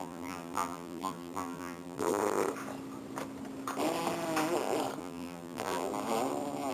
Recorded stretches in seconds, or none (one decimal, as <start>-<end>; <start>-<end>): 2.2-5.0; 5.9-6.7